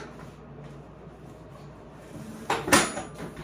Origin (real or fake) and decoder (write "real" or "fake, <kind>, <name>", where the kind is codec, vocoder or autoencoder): real